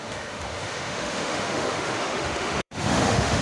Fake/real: fake